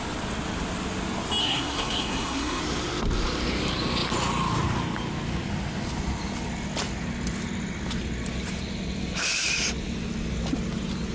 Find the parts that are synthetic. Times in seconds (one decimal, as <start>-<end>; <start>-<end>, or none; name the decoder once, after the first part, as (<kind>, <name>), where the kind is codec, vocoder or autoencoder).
1.4-2.6 (codec, SNAC)